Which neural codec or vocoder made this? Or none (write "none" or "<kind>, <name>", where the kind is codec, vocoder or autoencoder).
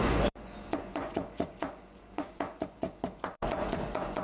vocoder, Vocos